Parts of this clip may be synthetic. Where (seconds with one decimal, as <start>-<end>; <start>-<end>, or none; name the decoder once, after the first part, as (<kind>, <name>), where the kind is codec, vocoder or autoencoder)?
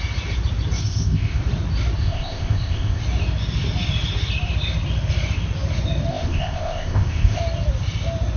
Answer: 0.8-1.4 (codec, ZipCodec); 2.0-3.0; 6.1-7.4